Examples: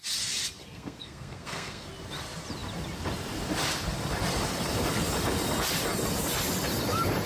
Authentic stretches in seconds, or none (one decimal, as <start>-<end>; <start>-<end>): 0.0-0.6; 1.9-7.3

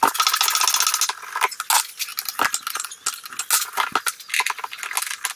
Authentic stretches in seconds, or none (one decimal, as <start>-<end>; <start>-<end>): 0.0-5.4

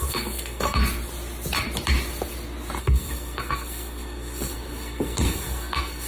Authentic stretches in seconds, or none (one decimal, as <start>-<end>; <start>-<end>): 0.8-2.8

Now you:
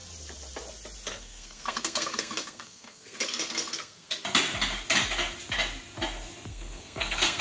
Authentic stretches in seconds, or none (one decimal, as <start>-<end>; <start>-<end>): 0.0-1.1; 4.1-6.5

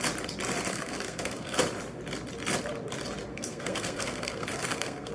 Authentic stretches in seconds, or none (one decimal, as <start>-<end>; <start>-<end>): 0.0-0.7; 1.6-3.3